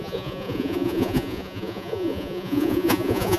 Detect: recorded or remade remade